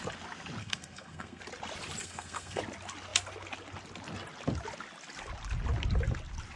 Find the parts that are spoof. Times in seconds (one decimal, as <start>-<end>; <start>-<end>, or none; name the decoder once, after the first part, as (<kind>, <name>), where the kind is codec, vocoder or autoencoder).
0.6-1.4 (codec, SNAC); 2.0-2.6